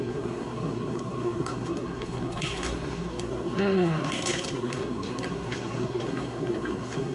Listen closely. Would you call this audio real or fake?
fake